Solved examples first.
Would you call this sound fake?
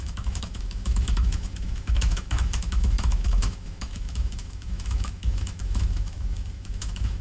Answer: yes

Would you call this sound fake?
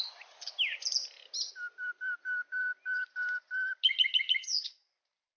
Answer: no